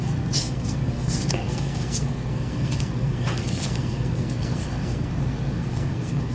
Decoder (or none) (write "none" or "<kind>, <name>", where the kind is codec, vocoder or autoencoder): codec, SNAC